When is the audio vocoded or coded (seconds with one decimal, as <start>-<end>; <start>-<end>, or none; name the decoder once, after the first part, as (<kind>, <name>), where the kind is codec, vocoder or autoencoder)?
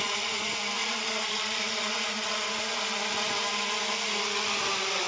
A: 0.8-2.8 (vocoder, Vocos)